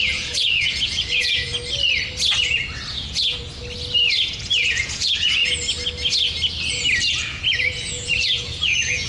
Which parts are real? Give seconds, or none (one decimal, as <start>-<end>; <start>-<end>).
1.5-2.9; 3.6-4.3; 5.4-7.1